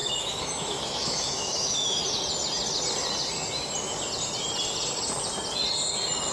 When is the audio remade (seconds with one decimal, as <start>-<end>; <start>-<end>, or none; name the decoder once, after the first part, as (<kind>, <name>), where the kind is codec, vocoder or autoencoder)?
0.0-2.0 (autoencoder, DAC-VAE)